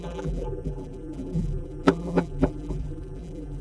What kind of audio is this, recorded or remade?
remade